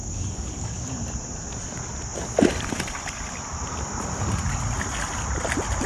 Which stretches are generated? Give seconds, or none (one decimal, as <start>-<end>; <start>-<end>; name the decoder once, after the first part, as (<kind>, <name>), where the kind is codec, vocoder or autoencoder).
0.0-0.9 (codec, DAC)